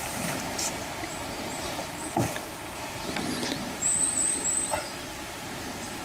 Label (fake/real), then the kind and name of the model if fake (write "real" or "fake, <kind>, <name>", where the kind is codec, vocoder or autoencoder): fake, vocoder, BigVGAN v2